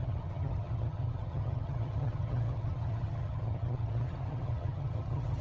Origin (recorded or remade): remade